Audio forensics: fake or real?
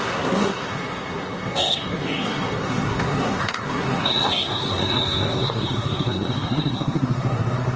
fake